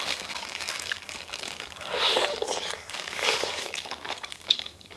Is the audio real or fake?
fake